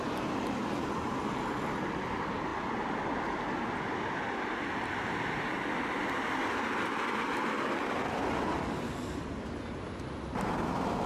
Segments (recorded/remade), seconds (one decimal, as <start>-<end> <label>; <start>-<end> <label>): 0.0-11.1 recorded